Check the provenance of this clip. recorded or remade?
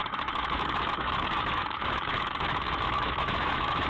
remade